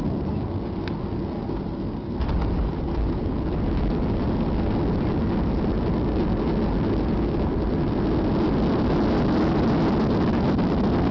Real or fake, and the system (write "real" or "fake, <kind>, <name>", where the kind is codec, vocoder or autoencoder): real